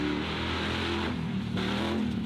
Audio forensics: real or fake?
real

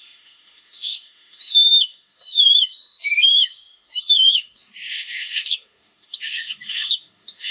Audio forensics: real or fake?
fake